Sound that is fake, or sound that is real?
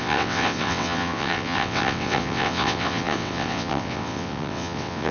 fake